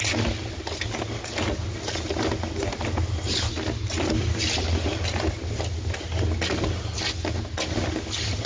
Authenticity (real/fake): real